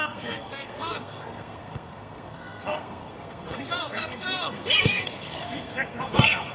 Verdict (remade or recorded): remade